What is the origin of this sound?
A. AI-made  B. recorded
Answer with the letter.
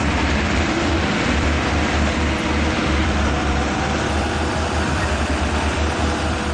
A